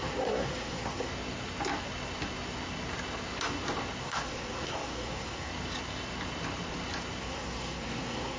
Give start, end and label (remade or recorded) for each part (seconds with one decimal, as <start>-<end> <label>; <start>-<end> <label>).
0.0-1.1 remade; 1.1-4.0 recorded; 4.0-5.5 remade; 5.5-7.2 recorded; 7.2-8.4 remade